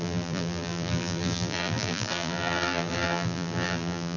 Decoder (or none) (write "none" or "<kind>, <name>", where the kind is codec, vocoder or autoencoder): vocoder, BigVGAN v2